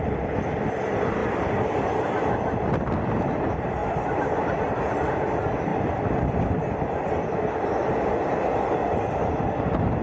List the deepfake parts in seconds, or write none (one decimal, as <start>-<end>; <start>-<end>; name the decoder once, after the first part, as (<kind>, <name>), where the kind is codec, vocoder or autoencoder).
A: none